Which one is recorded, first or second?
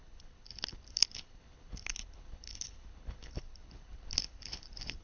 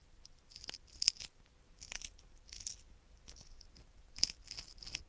second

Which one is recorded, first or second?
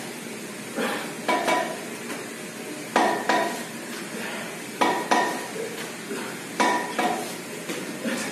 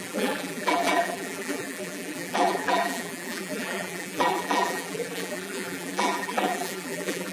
first